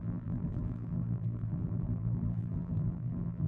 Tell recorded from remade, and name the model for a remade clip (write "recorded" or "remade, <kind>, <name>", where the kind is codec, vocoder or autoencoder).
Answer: remade, vocoder, BigVGAN v2